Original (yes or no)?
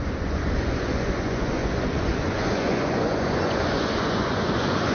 no